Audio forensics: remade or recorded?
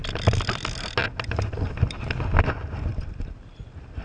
recorded